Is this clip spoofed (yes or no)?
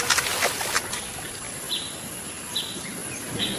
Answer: no